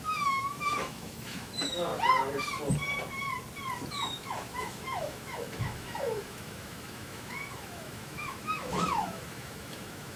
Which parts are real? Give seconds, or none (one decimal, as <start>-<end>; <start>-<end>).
1.9-3.9